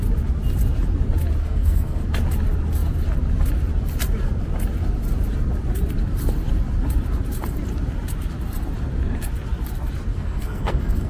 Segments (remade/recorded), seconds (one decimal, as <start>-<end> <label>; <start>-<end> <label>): 0.0-1.4 recorded; 1.4-2.0 remade; 2.0-10.1 recorded; 10.1-11.1 remade